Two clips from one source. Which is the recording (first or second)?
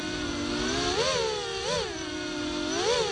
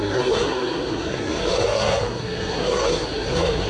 first